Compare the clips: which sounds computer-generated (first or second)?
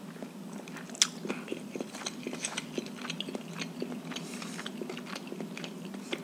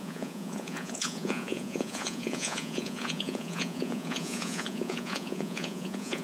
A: second